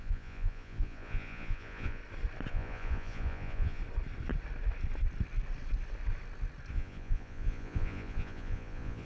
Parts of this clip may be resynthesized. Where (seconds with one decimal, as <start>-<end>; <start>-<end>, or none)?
0.0-2.0; 2.5-3.8; 6.7-9.1